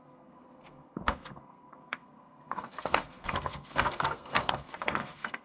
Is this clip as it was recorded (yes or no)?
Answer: no